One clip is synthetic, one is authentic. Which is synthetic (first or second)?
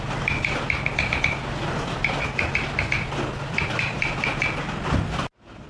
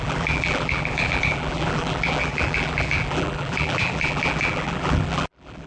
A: second